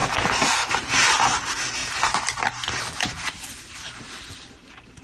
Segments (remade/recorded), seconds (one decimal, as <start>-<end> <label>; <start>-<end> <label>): 0.0-5.0 recorded